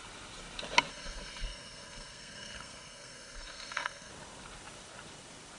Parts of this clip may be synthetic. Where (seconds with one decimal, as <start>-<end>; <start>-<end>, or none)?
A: 0.9-4.1

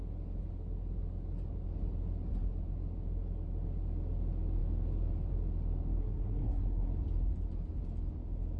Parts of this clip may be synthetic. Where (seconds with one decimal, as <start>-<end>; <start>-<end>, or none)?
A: 6.0-6.9

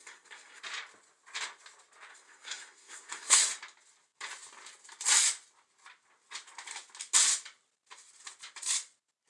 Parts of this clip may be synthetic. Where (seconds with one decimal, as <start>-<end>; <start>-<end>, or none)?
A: 0.0-0.6; 2.1-3.4

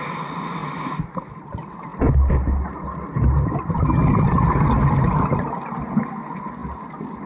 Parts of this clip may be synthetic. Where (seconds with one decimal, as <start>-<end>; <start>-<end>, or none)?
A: none

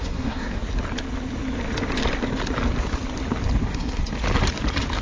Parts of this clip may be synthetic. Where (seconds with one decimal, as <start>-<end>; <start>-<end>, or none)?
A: 0.0-0.6; 3.6-4.0

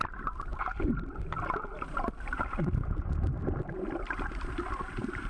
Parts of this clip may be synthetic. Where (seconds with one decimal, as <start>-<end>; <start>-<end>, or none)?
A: none

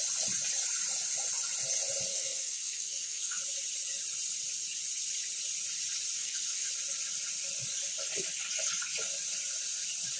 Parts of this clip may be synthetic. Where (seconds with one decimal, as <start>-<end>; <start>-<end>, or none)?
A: 2.1-3.4; 6.2-6.7

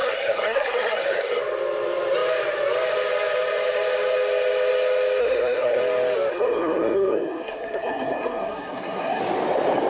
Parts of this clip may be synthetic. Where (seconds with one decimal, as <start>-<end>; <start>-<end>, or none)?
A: 0.0-1.4; 5.2-5.8; 6.3-9.2